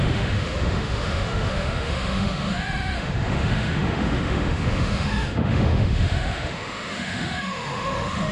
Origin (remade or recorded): remade